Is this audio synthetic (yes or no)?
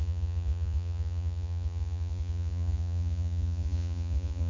yes